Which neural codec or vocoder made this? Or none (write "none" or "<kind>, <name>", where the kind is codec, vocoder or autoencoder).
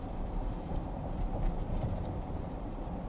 vocoder, BigVGAN v2